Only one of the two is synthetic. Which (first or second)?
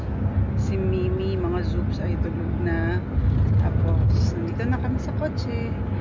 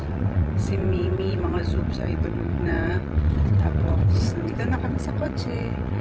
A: second